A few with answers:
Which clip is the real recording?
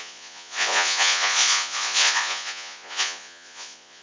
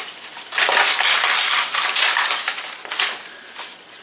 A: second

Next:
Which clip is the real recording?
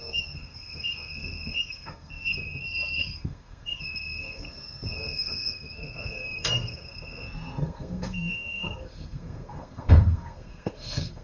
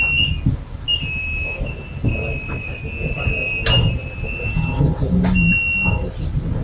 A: second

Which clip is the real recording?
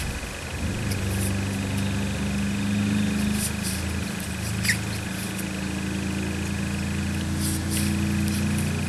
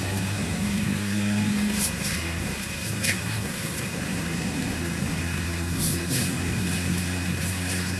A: first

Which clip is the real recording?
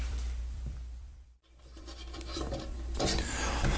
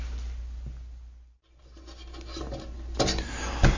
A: second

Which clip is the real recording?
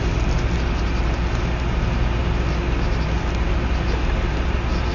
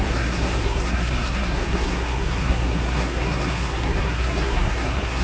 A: first